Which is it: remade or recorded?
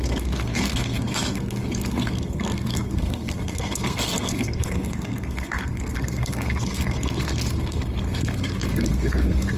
remade